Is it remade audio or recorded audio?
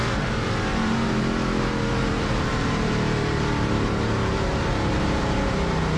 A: remade